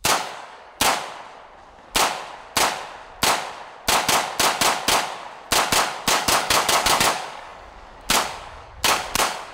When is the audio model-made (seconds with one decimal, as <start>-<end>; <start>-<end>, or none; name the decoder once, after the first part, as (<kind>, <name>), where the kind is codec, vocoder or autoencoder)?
0.0-0.9 (codec, DAC); 6.1-9.5

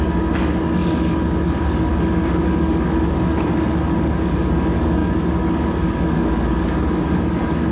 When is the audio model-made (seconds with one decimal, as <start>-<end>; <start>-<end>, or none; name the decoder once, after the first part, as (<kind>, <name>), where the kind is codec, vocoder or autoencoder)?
0.0-7.7 (codec, DAC)

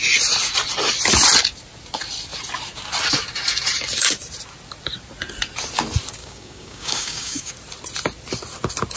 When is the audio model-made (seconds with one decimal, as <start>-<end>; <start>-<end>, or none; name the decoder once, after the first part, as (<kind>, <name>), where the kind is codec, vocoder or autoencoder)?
6.2-7.5 (codec, DAC)

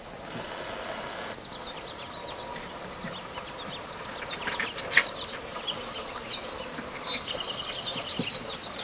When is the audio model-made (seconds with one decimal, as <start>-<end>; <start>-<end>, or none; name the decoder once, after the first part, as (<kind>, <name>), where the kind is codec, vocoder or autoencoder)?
none

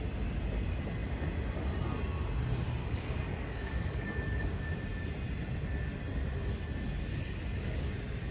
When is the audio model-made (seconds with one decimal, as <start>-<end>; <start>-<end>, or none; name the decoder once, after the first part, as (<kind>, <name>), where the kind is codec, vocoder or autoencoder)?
2.8-4.6 (codec, DAC); 7.1-7.9